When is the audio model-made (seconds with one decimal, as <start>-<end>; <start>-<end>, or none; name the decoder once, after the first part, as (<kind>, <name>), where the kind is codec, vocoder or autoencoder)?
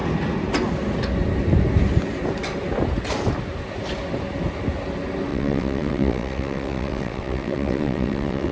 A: 5.3-8.5 (vocoder, WaveNeXt)